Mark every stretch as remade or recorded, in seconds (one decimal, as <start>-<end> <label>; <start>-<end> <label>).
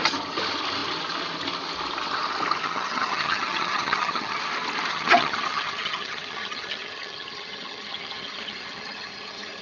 0.0-2.6 recorded; 2.6-4.4 remade; 4.4-4.9 recorded; 4.9-9.6 remade